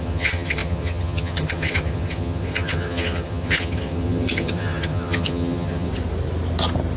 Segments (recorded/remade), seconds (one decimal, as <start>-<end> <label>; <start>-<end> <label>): 0.0-5.9 remade; 5.9-7.0 recorded